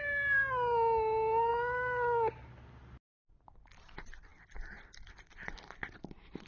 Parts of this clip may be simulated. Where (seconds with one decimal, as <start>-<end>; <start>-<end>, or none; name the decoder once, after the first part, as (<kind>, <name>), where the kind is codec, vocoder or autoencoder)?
none